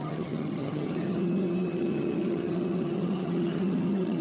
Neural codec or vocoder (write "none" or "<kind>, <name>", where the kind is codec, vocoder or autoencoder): vocoder, HiFi-GAN